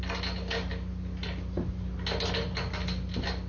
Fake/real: real